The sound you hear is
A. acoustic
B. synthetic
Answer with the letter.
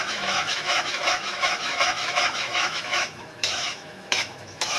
B